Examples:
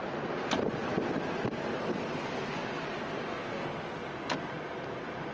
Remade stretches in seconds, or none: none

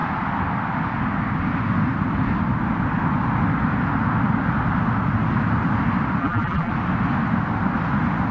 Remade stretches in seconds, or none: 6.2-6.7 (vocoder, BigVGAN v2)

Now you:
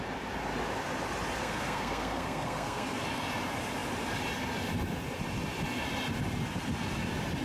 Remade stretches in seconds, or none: 1.4-3.0 (codec, SNAC)

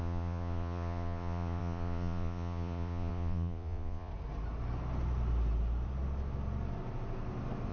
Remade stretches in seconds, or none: 0.0-4.1 (vocoder, Vocos)